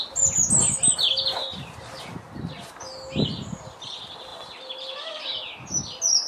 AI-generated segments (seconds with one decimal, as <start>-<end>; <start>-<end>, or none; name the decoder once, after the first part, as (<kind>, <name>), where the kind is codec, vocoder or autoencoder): 4.3-5.2 (vocoder, BigVGAN v2)

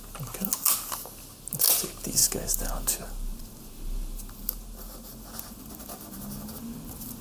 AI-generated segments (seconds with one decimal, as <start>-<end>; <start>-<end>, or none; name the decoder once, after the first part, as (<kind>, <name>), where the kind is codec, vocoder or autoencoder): none